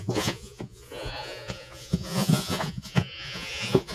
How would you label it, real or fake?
fake